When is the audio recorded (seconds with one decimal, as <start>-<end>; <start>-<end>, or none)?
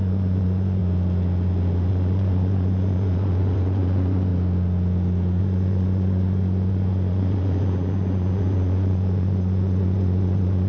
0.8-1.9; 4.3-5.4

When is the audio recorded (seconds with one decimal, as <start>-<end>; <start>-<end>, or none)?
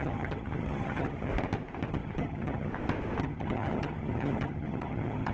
1.3-1.9; 2.7-3.2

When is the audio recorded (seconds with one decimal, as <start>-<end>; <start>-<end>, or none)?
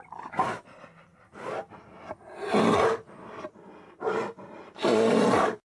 0.0-5.6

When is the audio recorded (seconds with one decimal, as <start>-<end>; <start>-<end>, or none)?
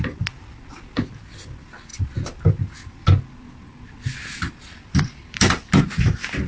0.0-6.5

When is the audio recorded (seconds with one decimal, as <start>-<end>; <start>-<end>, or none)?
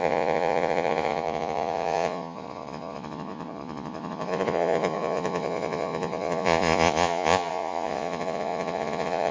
none